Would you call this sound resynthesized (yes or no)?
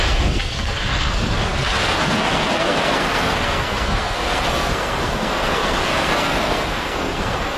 yes